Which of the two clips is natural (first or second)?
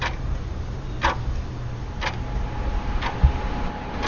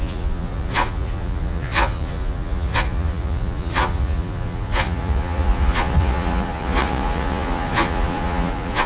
first